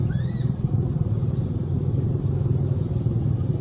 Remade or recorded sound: recorded